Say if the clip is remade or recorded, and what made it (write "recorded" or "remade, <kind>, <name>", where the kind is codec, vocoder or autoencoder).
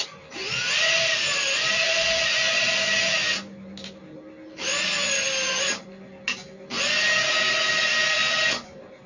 recorded